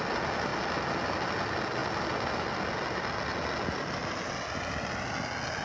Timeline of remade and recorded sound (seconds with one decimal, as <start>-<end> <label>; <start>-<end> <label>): 0.0-5.6 recorded